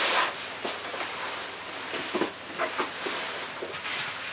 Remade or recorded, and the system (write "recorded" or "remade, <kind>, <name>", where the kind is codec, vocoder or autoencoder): recorded